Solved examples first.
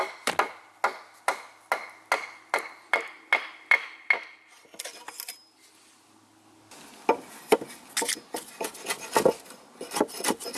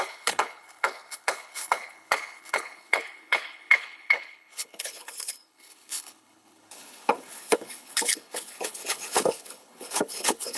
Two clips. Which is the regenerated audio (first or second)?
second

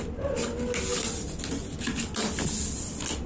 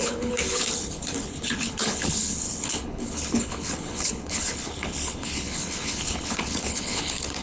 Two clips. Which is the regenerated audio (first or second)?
second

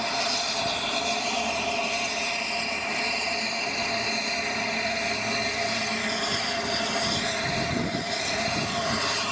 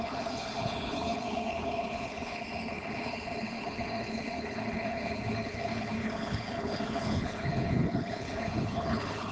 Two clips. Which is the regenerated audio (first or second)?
second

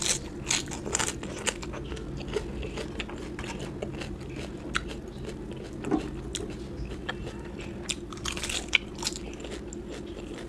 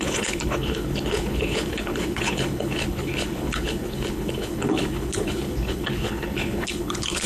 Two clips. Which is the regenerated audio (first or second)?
second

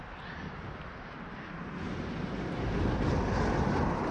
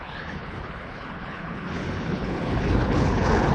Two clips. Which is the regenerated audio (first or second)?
second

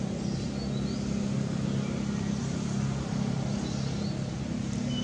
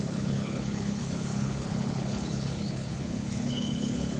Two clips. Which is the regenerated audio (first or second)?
second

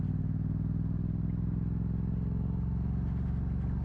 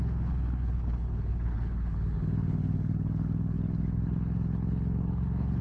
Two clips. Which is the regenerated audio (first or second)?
second